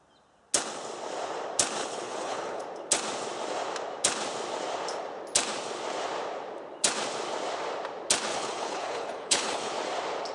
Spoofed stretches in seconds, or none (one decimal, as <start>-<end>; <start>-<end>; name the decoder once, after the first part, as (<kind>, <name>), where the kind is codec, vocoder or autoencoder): 1.8-2.6 (codec, HILCodec); 8.3-9.7